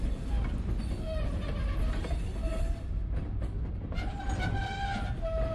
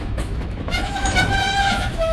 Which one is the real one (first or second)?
first